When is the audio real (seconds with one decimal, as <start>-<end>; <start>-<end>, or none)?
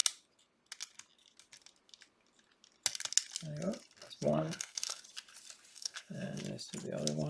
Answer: 0.0-4.3; 5.0-5.7; 6.4-7.3